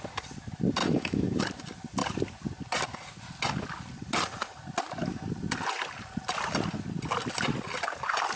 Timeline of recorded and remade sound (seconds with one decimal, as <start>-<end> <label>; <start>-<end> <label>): 0.0-0.8 recorded; 0.8-1.4 remade; 1.4-8.4 recorded